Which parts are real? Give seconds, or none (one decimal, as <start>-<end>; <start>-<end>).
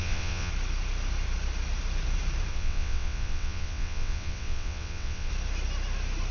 0.5-2.5; 5.3-6.3